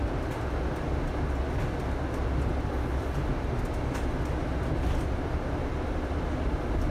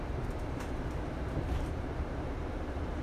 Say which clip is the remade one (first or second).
second